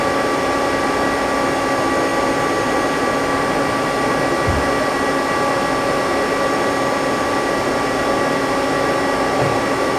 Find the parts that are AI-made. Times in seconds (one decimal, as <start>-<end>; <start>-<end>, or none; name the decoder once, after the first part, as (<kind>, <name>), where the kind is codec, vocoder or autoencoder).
none